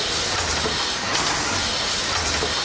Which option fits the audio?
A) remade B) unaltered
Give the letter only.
B